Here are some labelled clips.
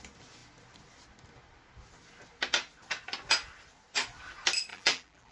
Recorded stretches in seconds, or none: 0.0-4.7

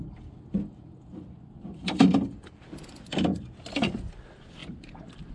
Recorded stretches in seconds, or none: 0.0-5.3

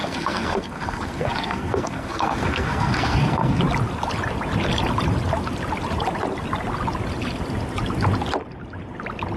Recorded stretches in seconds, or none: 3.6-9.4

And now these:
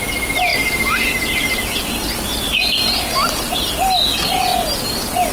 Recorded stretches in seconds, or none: 0.0-5.3

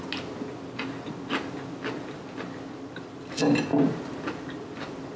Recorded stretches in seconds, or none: 0.0-5.2